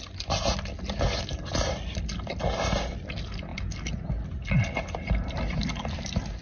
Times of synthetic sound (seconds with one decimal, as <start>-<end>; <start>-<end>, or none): none